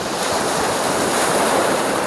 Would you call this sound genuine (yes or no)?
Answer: no